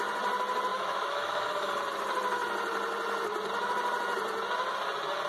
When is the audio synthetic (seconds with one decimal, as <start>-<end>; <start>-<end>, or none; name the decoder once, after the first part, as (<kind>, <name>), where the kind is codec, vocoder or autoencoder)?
0.7-1.7 (autoencoder, DAC-VAE)